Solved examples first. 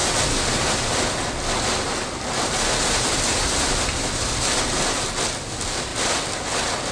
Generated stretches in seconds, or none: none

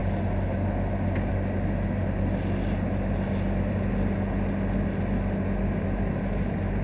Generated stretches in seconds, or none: none

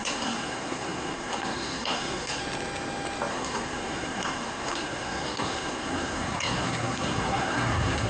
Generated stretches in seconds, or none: 0.0-2.4 (codec, SNAC); 3.3-8.1